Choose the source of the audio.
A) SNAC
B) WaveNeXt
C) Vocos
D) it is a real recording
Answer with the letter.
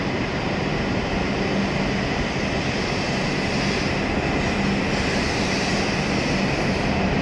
D